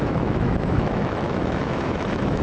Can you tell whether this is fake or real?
fake